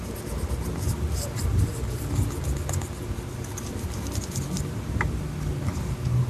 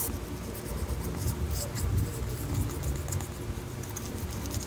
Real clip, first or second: second